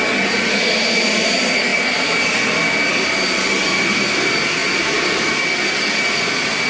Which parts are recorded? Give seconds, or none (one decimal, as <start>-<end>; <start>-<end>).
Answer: 0.0-4.6; 5.4-6.7